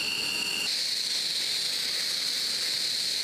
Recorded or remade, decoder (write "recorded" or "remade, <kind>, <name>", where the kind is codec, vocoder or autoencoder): recorded